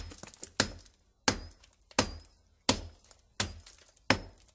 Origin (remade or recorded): recorded